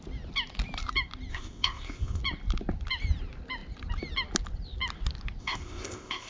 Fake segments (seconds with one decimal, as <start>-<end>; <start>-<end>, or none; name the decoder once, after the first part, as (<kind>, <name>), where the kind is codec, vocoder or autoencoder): 1.3-2.2 (codec, ZipCodec); 5.4-6.3